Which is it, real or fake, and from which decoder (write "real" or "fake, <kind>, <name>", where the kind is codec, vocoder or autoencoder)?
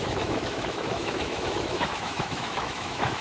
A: fake, autoencoder, DAC-VAE